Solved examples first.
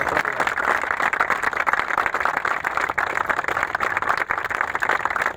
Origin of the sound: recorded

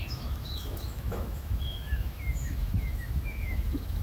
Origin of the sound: remade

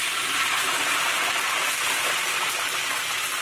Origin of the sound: recorded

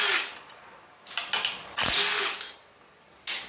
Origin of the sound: recorded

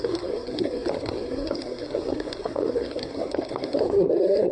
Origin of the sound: remade